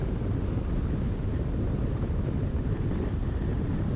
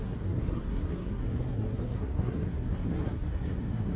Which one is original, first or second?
first